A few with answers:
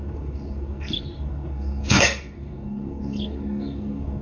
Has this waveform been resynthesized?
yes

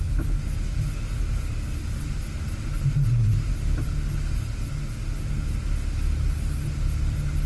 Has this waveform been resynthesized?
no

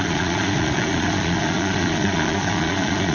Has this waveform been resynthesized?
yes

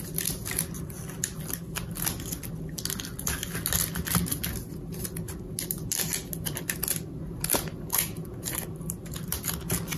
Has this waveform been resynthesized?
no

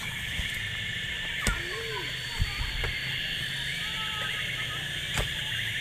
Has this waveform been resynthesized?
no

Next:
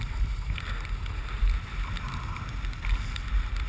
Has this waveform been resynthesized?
no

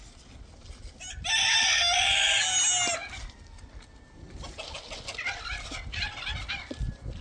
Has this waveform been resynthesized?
no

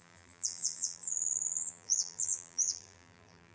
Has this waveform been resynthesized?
yes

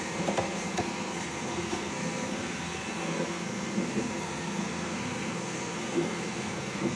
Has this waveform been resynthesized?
yes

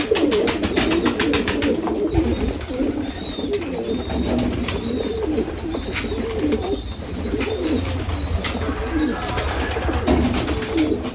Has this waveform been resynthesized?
no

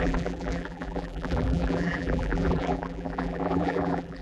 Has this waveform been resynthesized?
yes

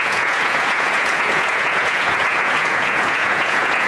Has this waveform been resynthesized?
yes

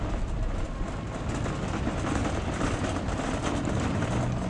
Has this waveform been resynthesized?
no